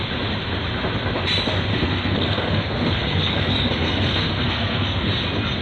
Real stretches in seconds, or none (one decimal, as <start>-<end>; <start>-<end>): 0.0-1.7; 5.1-5.6